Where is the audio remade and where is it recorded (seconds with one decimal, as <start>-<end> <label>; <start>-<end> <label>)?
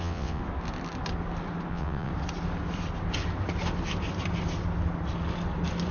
0.0-0.4 remade; 0.4-1.7 recorded; 1.7-2.1 remade; 2.1-5.9 recorded